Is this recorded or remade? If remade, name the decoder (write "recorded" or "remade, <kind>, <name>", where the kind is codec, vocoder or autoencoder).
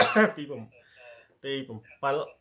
recorded